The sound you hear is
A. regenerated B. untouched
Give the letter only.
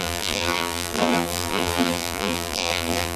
A